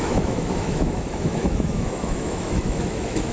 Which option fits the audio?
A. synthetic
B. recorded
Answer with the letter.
A